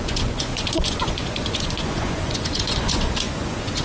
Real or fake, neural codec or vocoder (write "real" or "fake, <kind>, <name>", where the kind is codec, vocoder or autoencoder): fake, vocoder, Vocos